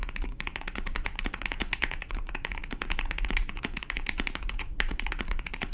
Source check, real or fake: fake